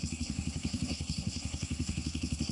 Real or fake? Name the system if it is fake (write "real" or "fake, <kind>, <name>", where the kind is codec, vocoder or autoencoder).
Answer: fake, codec, SNAC